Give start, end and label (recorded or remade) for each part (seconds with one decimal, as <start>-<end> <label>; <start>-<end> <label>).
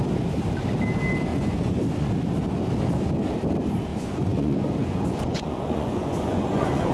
0.0-1.3 recorded; 1.3-1.8 remade; 1.8-3.9 recorded; 3.9-6.9 remade